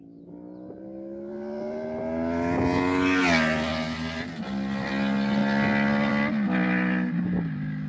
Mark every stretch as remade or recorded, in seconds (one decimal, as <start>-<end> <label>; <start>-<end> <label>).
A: 0.0-7.9 recorded